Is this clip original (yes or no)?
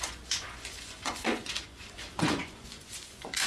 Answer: no